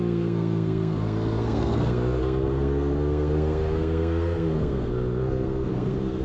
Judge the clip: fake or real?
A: fake